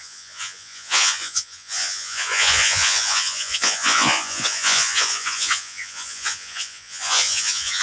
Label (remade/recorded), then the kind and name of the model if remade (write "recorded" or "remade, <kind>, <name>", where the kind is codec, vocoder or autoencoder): remade, vocoder, Vocos